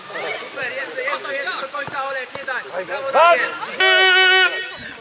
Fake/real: real